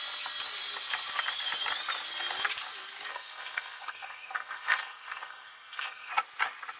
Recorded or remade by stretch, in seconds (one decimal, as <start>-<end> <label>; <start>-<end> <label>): 0.0-3.1 recorded; 3.1-6.1 remade; 6.1-6.8 recorded